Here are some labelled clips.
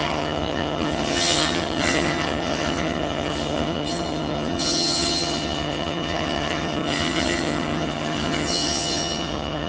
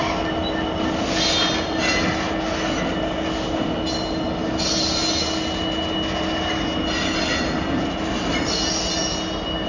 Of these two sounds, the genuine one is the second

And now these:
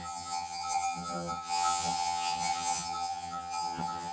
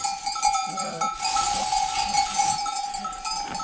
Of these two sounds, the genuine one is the second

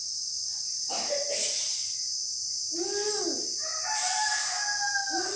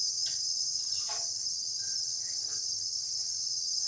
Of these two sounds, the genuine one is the first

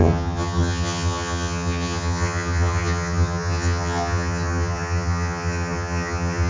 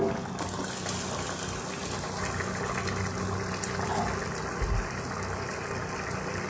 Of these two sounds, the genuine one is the second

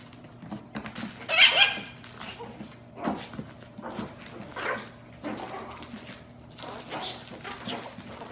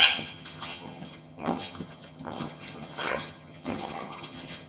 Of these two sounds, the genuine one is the first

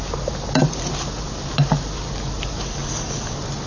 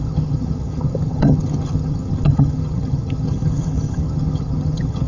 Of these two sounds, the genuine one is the first